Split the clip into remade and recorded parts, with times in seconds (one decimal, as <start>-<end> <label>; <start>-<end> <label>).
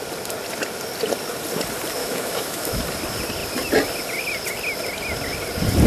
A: 0.0-2.0 recorded; 2.0-2.8 remade; 2.8-5.9 recorded